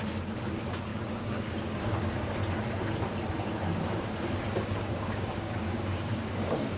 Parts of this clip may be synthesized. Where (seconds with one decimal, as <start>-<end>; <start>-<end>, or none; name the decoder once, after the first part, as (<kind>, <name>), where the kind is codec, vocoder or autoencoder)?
0.0-2.4 (codec, DAC); 3.3-6.8